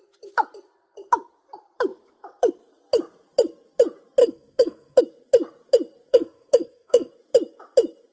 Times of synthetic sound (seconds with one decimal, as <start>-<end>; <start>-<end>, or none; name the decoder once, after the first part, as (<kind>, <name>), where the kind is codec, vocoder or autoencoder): 4.2-5.0 (codec, SNAC); 6.1-7.1